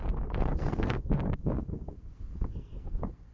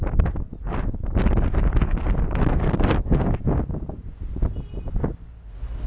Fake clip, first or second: first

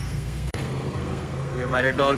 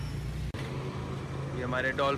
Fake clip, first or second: first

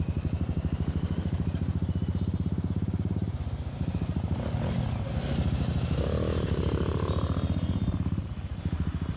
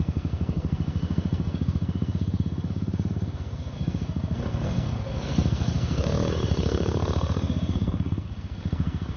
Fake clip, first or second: second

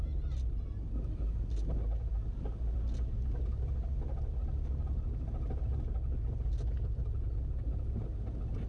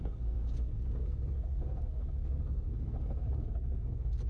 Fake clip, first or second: second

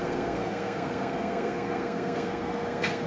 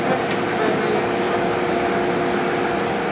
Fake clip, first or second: first